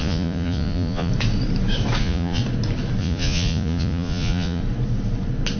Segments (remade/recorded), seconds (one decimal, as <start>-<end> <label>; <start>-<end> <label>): 0.0-1.1 remade; 1.1-2.0 recorded; 2.0-2.4 remade; 2.4-3.0 recorded; 3.0-4.6 remade; 4.6-5.6 recorded